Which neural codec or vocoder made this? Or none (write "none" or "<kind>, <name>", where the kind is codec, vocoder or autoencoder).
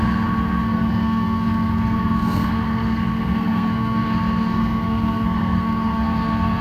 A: codec, SNAC